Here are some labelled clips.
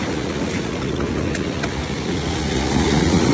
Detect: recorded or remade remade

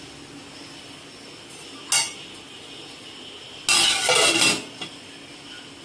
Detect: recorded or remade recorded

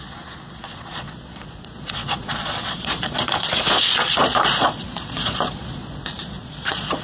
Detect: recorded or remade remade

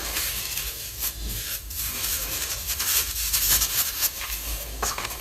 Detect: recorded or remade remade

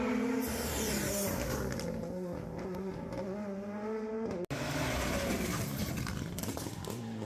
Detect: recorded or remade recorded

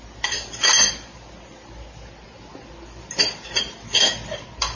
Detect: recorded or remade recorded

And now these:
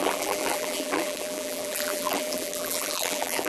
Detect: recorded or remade remade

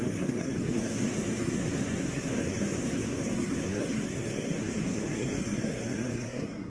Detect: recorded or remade remade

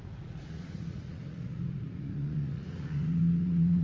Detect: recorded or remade remade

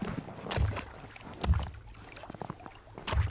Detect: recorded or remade recorded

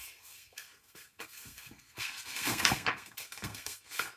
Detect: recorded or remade remade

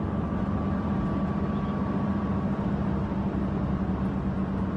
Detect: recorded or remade recorded